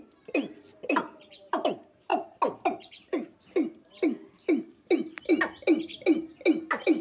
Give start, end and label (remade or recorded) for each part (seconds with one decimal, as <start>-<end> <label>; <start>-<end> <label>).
0.0-7.0 recorded